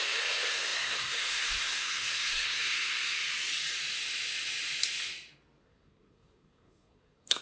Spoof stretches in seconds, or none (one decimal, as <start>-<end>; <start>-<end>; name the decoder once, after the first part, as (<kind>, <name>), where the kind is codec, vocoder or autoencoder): 0.0-3.2 (codec, SNAC); 5.6-7.4